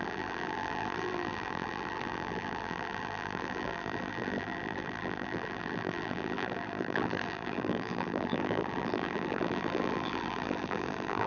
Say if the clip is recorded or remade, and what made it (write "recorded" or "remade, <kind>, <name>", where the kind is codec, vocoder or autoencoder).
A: remade, vocoder, BigVGAN v2